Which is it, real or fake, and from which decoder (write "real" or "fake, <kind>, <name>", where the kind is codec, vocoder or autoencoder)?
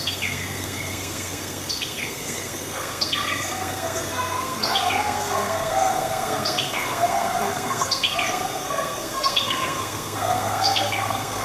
fake, codec, SNAC